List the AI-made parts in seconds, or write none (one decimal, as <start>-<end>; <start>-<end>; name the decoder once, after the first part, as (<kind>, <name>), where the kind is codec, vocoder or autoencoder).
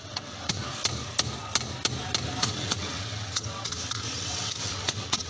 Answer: 0.0-0.6 (vocoder, WaveNeXt); 2.4-5.3